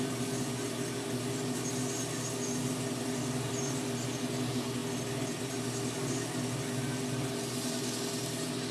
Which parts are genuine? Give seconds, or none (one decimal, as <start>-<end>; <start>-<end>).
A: 0.0-8.7